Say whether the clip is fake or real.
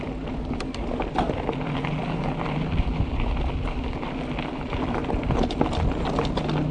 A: real